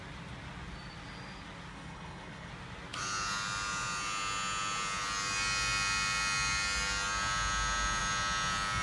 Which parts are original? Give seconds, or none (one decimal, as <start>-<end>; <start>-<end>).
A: 0.0-1.7; 2.5-8.8